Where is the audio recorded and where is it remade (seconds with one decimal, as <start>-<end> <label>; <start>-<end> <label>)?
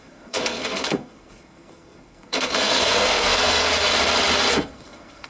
0.0-3.9 remade; 3.9-4.5 recorded; 4.5-5.3 remade